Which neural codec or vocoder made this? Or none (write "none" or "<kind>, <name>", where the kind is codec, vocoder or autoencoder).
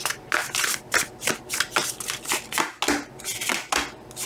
none